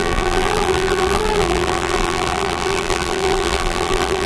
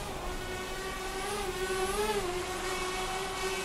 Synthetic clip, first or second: first